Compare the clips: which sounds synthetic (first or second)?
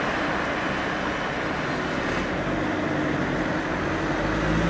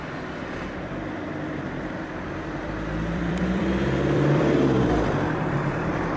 second